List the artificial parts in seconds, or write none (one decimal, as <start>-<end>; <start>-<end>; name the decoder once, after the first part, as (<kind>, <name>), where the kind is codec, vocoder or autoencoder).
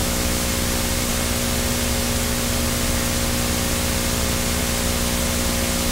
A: 0.0-0.5 (autoencoder, DAC-VAE)